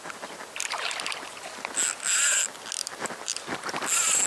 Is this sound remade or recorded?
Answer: recorded